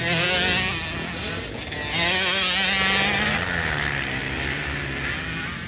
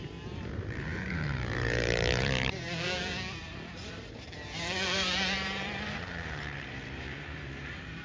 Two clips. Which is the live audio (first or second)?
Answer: first